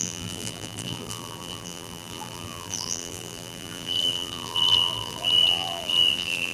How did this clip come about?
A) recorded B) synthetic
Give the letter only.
B